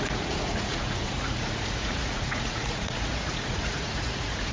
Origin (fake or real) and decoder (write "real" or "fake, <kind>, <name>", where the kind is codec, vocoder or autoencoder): fake, vocoder, Vocos